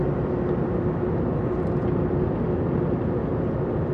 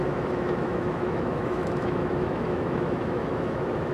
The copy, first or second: second